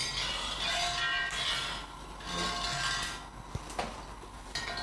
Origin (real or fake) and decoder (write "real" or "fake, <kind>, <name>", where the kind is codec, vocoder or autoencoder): real